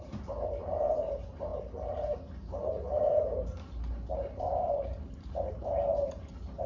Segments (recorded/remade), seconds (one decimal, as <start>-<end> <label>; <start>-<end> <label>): 0.0-1.5 recorded; 1.5-2.2 remade; 2.2-3.9 recorded; 3.9-6.2 remade; 6.2-6.7 recorded